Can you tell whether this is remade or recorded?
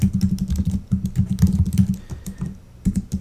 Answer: recorded